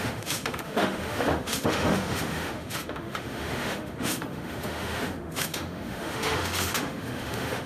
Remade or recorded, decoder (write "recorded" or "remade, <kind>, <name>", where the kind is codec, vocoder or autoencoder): remade, autoencoder, DAC-VAE